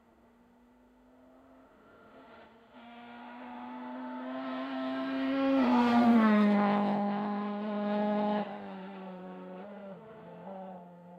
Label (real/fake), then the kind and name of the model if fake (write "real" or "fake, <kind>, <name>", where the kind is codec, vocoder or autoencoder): fake, autoencoder, DAC-VAE